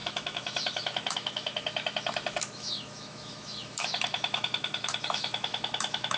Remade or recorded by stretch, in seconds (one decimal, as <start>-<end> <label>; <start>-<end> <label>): 0.0-6.2 remade

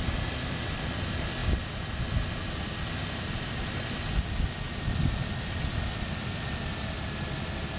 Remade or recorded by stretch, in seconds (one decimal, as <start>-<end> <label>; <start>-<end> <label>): 0.0-7.8 recorded